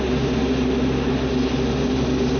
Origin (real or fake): real